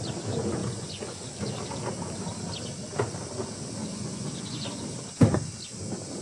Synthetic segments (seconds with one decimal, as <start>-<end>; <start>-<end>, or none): 0.6-1.5; 3.9-5.0